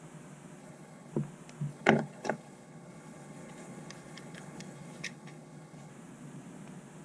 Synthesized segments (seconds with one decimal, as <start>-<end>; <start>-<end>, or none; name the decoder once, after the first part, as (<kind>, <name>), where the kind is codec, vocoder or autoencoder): 0.6-1.1 (codec, HILCodec); 1.7-5.9